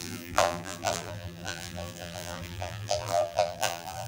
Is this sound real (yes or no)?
no